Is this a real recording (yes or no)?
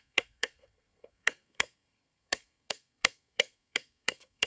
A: no